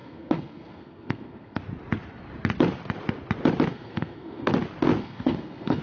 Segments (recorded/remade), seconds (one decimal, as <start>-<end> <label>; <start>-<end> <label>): 0.0-1.6 remade; 1.6-3.7 recorded; 3.7-4.5 remade; 4.5-5.0 recorded; 5.0-5.8 remade